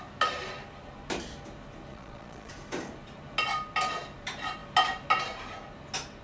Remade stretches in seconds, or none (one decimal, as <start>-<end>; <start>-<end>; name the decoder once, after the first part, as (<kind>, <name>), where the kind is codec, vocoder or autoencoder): 1.9-2.5 (vocoder, Vocos)